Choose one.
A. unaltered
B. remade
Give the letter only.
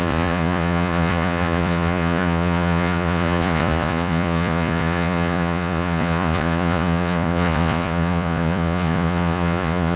B